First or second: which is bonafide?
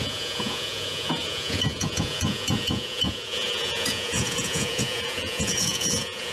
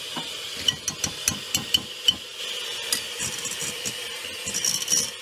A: second